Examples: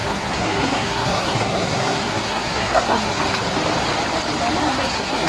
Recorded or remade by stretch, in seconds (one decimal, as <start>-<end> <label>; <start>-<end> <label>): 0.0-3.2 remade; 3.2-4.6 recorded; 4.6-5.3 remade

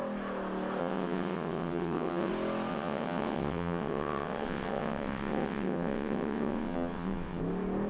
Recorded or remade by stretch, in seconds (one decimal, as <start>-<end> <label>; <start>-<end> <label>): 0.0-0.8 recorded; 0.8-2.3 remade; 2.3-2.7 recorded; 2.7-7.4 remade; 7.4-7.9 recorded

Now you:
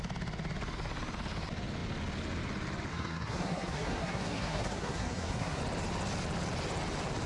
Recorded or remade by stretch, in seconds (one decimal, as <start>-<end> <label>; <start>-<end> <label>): 0.0-2.9 recorded; 2.9-5.6 remade; 5.6-7.3 recorded